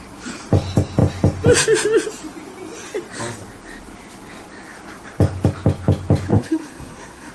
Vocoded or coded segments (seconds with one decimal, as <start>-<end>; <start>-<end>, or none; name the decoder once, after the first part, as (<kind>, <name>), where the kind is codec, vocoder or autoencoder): 6.3-7.3 (codec, SNAC)